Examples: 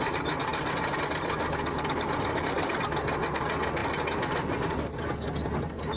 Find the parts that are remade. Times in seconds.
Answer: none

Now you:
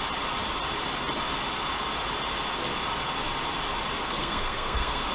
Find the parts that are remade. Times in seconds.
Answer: 4.0-5.1 (codec, SNAC)